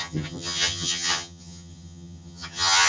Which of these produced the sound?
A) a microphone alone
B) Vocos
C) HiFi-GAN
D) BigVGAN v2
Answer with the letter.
C